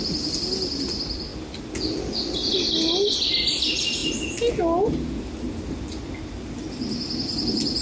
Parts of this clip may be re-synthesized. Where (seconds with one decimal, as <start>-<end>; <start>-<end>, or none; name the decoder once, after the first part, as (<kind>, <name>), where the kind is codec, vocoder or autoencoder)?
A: none